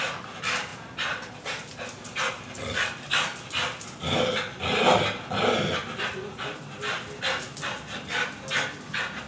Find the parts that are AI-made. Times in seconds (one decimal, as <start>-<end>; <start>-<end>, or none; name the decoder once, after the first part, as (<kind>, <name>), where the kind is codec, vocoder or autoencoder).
none